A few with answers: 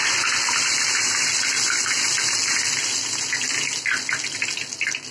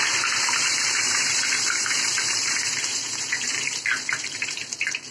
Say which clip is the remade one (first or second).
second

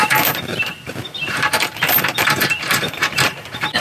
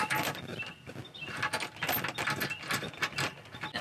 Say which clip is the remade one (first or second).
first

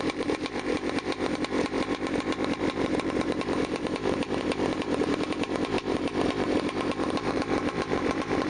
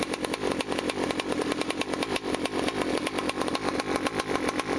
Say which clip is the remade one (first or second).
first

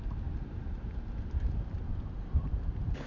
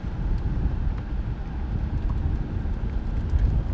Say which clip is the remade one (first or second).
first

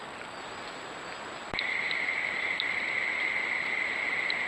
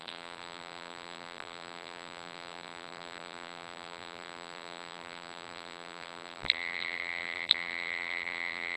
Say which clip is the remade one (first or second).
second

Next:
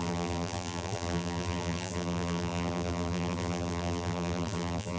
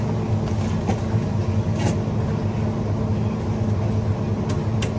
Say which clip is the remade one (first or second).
first